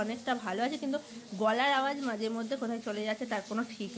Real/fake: real